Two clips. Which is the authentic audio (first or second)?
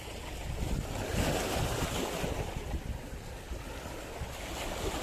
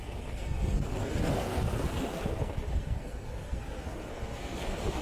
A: first